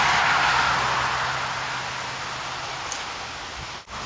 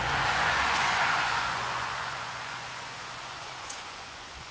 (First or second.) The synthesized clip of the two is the second